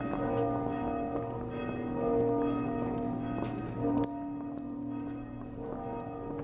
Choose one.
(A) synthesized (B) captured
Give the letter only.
B